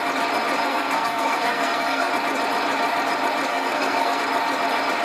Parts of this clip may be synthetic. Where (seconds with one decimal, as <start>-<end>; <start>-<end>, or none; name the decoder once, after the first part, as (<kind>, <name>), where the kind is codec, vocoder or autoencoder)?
0.6-2.1 (codec, SNAC); 3.5-4.2